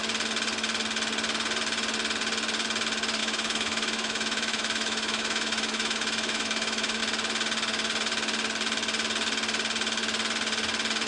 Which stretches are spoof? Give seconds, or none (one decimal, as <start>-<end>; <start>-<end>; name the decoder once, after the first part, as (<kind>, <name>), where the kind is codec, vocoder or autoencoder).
3.2-7.0 (autoencoder, DAC-VAE)